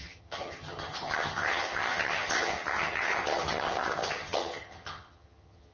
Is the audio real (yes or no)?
no